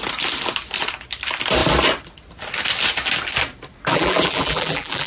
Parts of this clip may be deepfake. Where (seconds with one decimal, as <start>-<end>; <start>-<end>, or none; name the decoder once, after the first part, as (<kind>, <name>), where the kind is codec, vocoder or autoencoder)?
3.9-5.1 (vocoder, BigVGAN v2)